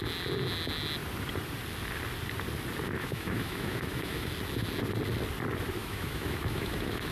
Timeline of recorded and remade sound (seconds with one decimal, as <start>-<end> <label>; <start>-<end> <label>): 0.0-3.0 recorded; 3.0-4.3 remade; 4.3-5.8 recorded; 5.8-7.1 remade